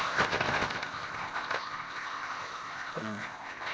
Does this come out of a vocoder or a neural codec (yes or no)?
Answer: yes